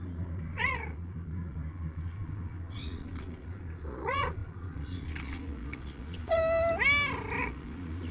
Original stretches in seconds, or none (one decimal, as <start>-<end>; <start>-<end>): 6.4-7.4